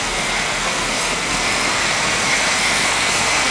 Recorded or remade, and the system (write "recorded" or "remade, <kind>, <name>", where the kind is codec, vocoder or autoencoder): remade, codec, SNAC